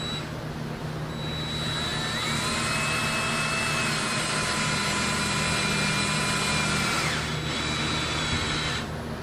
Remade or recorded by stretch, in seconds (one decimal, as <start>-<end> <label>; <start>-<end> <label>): 0.0-9.2 recorded